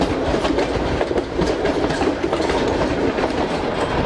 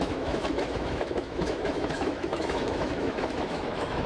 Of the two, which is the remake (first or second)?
second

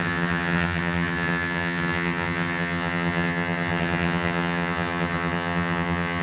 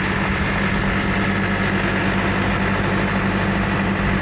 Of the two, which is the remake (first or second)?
first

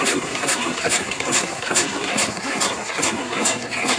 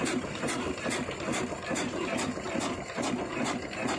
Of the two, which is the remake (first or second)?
first